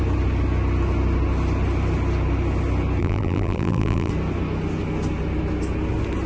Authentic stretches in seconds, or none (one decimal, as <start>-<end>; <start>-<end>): 0.0-3.0; 4.1-6.3